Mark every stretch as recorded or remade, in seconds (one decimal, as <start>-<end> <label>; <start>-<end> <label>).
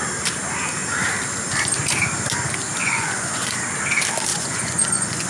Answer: 0.0-2.8 recorded; 2.8-3.6 remade; 3.6-4.3 recorded; 4.3-5.3 remade